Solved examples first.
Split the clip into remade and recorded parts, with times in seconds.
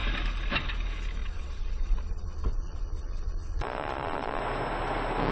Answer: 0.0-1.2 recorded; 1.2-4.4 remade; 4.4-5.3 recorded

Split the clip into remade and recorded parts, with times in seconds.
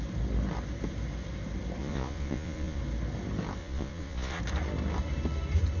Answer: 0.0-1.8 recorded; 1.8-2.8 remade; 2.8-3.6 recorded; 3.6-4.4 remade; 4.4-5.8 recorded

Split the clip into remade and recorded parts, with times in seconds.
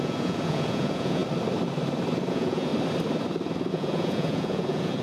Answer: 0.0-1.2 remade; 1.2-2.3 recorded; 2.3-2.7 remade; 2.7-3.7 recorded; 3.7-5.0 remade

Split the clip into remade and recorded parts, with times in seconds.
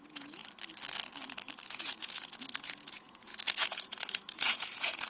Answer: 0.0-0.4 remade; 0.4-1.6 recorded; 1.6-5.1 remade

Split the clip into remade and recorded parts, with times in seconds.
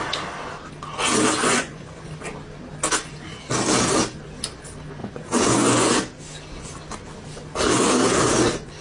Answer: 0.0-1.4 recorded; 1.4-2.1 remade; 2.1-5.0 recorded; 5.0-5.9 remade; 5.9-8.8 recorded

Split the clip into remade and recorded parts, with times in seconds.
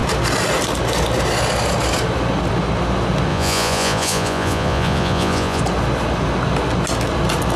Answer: 0.0-3.3 recorded; 3.3-5.6 remade; 5.6-7.6 recorded